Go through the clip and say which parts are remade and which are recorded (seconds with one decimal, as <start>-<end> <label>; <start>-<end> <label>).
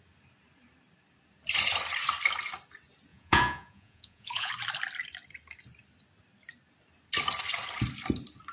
0.0-3.1 recorded; 3.1-4.5 remade; 4.5-8.5 recorded